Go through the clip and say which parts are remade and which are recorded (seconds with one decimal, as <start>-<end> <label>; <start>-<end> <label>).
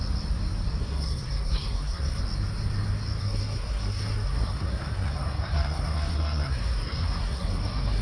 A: 0.0-0.8 recorded; 0.8-2.2 remade; 2.2-3.2 recorded; 3.2-8.0 remade